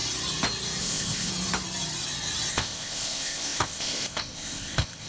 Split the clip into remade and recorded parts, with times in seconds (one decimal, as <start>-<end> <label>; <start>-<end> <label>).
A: 0.0-0.8 recorded; 0.8-1.3 remade; 1.3-2.5 recorded; 2.5-5.1 remade